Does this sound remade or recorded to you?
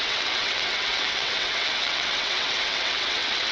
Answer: remade